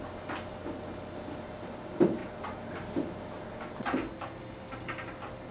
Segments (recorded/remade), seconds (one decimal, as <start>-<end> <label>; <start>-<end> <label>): 0.0-5.5 recorded